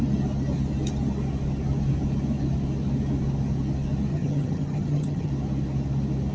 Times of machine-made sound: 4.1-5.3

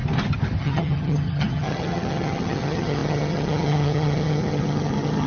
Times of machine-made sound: 0.6-5.3